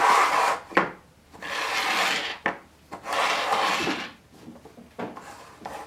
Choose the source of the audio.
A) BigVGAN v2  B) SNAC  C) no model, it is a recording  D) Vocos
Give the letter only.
C